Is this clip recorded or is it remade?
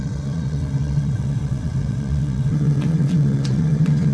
remade